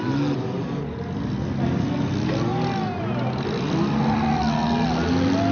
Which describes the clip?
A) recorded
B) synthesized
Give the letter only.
A